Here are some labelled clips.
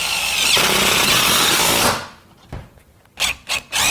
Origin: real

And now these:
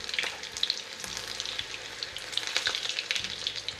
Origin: real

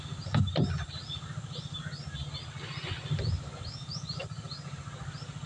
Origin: real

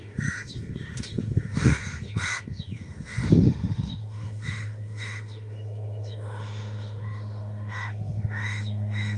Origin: fake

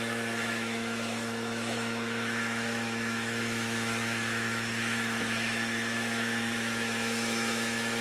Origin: fake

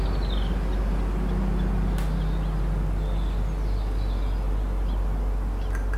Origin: real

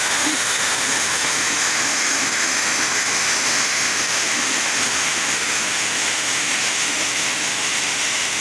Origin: fake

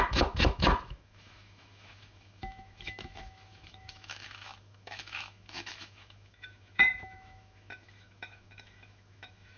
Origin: fake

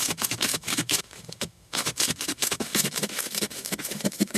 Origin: fake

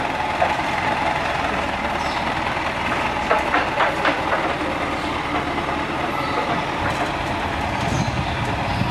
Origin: real